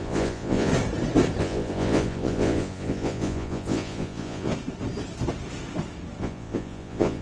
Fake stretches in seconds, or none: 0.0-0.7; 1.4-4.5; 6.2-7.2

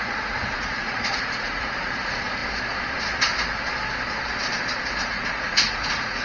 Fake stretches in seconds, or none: 0.0-2.4; 5.0-6.2

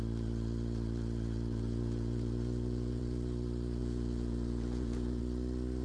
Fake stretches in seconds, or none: 1.5-3.0; 3.8-5.2